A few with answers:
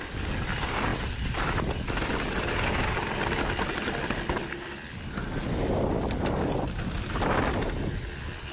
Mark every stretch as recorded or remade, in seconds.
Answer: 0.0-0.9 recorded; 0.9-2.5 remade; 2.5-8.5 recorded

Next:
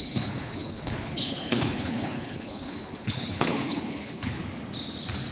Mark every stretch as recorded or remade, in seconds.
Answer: 0.0-4.4 remade; 4.4-5.3 recorded

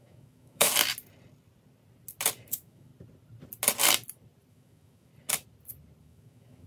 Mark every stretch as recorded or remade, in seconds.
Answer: 0.0-0.7 remade; 0.7-2.5 recorded; 2.5-2.9 remade; 2.9-4.5 recorded; 4.5-5.1 remade; 5.1-6.0 recorded; 6.0-6.7 remade

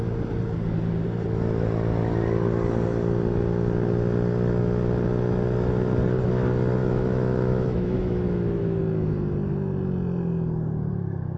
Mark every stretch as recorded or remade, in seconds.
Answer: 0.0-6.8 recorded; 6.8-8.8 remade; 8.8-11.4 recorded

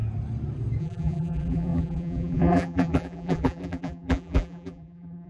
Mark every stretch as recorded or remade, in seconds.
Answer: 0.0-0.8 recorded; 0.8-5.3 remade

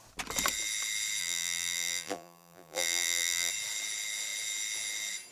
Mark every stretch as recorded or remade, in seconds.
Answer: 0.0-1.2 recorded; 1.2-3.5 remade; 3.5-5.3 recorded